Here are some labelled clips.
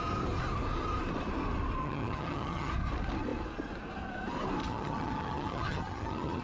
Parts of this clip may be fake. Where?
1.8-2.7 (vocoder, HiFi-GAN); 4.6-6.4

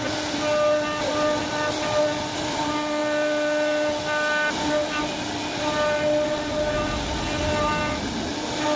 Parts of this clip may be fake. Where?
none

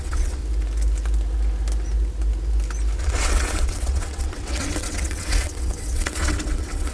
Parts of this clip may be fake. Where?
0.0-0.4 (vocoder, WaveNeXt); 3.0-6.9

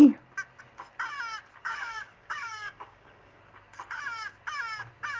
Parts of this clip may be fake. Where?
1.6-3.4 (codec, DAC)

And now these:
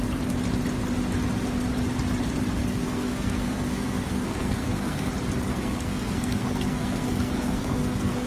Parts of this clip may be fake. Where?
2.6-5.1 (codec, SNAC); 5.5-8.3